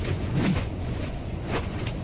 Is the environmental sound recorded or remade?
remade